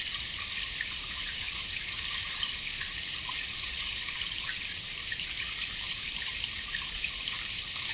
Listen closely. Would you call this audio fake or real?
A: fake